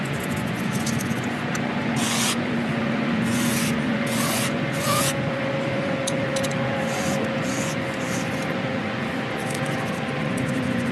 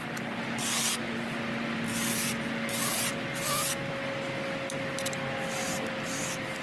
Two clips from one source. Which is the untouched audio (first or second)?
second